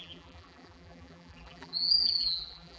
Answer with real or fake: fake